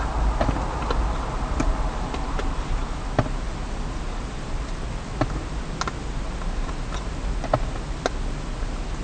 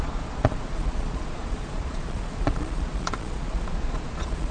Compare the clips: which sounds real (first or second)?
first